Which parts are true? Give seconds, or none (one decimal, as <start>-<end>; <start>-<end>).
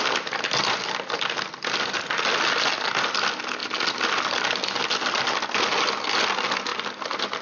0.0-6.7